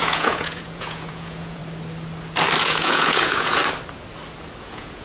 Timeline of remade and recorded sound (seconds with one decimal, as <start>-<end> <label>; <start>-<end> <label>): 0.0-1.6 remade; 1.6-2.6 recorded; 2.6-3.6 remade; 3.6-4.6 recorded; 4.6-5.0 remade